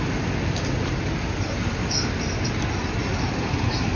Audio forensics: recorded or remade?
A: recorded